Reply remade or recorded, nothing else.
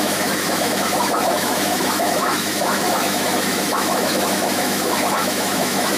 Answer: remade